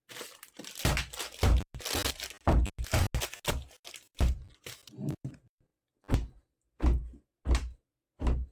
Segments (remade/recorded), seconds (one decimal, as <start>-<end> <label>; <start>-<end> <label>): 0.0-8.5 recorded